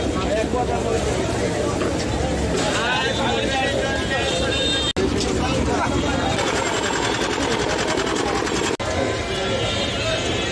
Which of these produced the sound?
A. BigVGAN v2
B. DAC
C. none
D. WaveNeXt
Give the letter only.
C